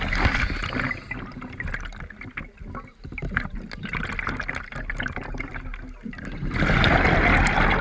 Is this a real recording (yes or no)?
yes